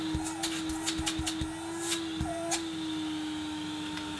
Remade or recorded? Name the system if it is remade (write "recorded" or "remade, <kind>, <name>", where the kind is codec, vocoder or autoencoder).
recorded